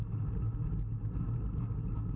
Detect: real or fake real